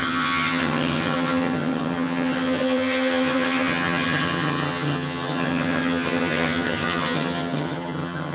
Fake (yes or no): yes